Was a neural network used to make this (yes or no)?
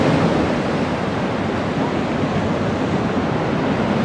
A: no